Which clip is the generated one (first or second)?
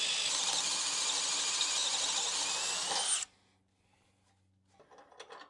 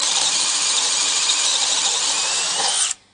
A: second